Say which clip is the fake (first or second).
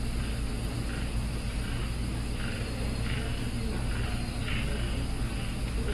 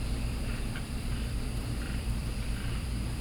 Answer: second